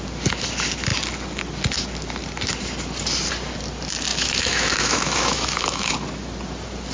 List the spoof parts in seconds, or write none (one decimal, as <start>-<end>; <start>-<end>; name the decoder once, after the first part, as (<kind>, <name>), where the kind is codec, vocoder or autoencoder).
4.1-5.9 (autoencoder, DAC-VAE)